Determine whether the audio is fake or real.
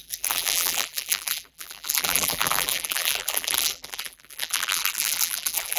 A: fake